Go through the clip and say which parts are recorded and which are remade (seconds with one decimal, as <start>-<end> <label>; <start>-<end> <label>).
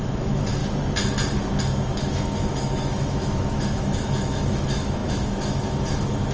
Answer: 0.0-0.6 remade; 0.6-1.9 recorded; 1.9-6.3 remade